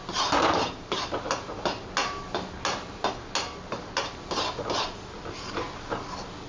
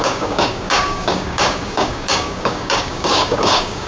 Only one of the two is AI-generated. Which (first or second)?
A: second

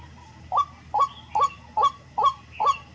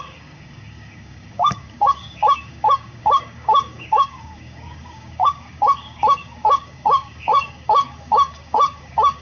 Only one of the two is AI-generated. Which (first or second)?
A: second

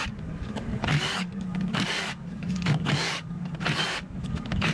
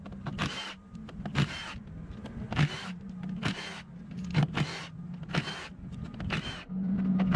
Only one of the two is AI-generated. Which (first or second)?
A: first